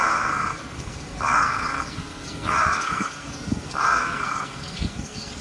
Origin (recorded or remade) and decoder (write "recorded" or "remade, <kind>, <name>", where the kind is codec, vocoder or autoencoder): remade, codec, SNAC